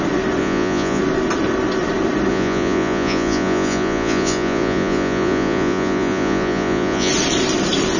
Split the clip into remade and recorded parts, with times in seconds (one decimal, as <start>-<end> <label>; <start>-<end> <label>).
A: 0.0-0.4 recorded; 0.4-1.0 remade; 1.0-2.3 recorded; 2.3-7.1 remade; 7.1-8.0 recorded